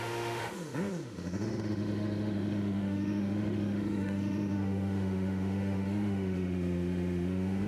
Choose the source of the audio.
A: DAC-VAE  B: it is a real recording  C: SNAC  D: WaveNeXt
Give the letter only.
A